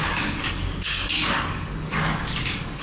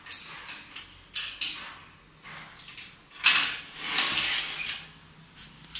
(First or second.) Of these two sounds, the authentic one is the second